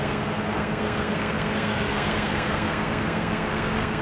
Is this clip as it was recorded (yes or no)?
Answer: no